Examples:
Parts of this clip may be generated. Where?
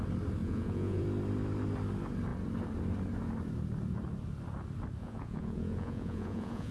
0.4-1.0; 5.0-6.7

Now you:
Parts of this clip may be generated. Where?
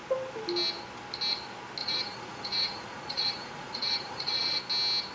1.8-4.6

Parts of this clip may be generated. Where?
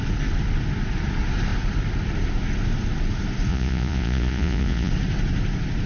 3.5-4.9